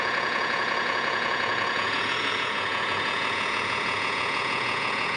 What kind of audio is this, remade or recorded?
remade